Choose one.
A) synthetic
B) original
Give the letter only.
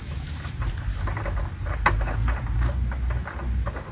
A